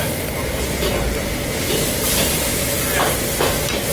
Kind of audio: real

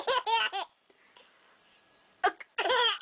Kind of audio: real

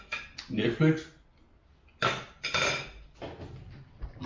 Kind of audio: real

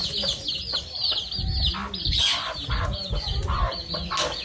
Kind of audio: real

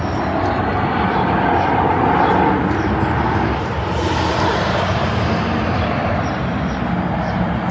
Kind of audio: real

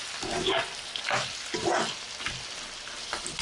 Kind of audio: real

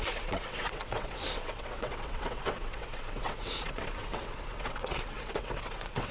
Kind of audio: fake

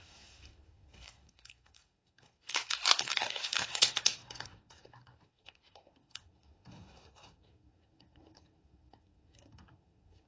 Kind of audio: fake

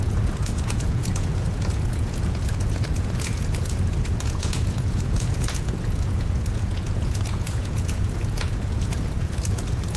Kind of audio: fake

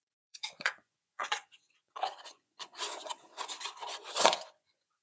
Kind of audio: fake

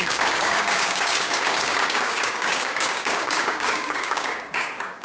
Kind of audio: fake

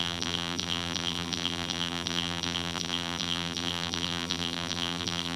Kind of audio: fake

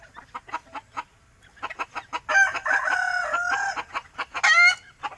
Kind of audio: real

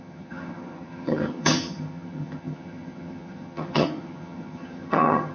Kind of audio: fake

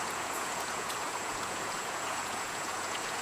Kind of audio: fake